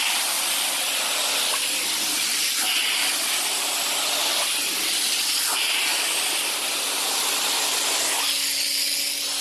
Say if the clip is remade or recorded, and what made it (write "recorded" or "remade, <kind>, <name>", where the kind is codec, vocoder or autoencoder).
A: recorded